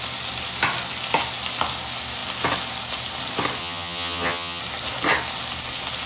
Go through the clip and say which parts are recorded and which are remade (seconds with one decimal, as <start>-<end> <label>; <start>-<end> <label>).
0.0-3.6 recorded; 3.6-4.6 remade; 4.6-6.1 recorded